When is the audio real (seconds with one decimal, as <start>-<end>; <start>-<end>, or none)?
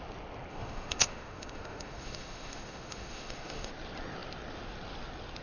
0.0-0.5; 3.7-5.4